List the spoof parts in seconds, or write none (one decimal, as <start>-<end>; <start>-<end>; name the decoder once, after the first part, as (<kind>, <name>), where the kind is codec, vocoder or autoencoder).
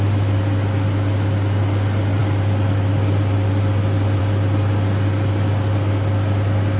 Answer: none